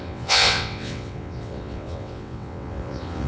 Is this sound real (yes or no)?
no